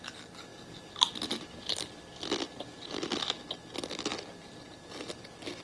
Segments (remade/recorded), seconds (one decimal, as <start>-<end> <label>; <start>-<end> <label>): 0.0-0.5 recorded; 0.5-3.2 remade; 3.2-4.1 recorded; 4.1-5.6 remade